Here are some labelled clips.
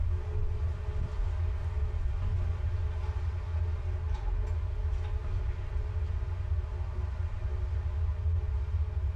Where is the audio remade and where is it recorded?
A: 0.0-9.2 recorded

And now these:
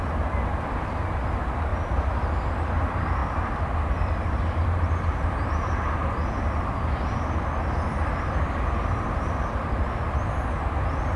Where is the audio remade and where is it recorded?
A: 0.0-11.2 recorded

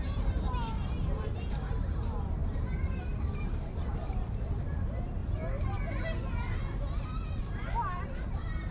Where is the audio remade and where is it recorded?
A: 0.0-5.2 remade; 5.2-7.4 recorded; 7.4-8.7 remade

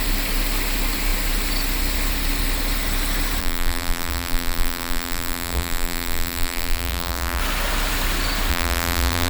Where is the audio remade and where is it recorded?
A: 0.0-3.4 recorded; 3.4-7.4 remade; 7.4-8.5 recorded; 8.5-9.3 remade

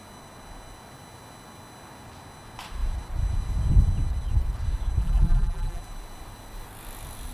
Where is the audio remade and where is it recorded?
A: 0.0-5.0 recorded; 5.0-5.8 remade; 5.8-7.3 recorded

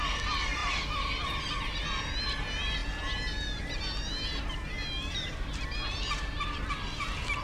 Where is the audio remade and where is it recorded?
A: 0.0-2.8 remade; 2.8-5.1 recorded; 5.1-7.4 remade

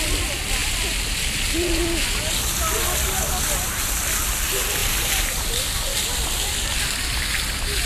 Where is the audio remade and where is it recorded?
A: 0.0-4.8 recorded; 4.8-5.5 remade; 5.5-7.9 recorded

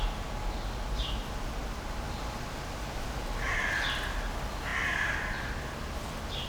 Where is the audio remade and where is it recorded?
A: 0.0-4.7 recorded; 4.7-6.5 remade